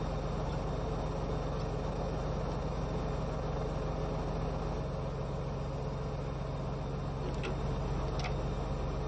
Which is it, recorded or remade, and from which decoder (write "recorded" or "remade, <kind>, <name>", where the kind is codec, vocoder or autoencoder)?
recorded